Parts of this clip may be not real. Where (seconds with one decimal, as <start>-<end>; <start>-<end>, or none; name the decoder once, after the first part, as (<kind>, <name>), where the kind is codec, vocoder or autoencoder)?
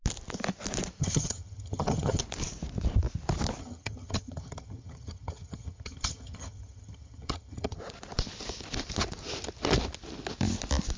1.0-2.2 (vocoder, HiFi-GAN); 3.6-7.8